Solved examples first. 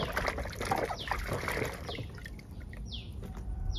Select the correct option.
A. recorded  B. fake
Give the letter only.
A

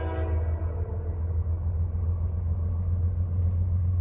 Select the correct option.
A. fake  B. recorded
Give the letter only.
B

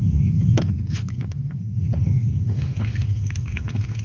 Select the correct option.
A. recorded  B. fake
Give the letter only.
B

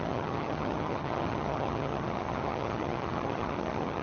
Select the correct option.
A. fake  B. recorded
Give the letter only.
A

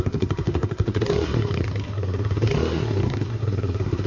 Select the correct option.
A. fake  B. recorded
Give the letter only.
A